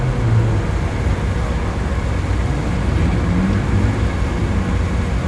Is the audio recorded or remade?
recorded